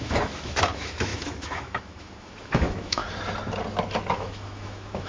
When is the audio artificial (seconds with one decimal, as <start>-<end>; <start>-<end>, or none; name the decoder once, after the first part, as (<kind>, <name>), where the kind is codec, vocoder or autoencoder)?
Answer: 0.0-3.0 (autoencoder, DAC-VAE); 4.1-5.1